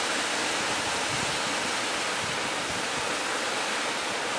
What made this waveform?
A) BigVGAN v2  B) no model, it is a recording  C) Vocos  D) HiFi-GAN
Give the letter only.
B